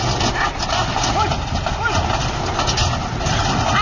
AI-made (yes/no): no